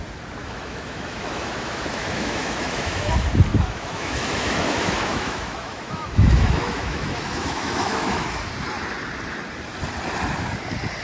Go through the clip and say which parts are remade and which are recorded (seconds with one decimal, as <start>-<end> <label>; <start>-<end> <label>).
0.0-0.4 recorded; 0.4-3.1 remade; 3.1-3.5 recorded; 3.5-8.5 remade; 8.5-11.0 recorded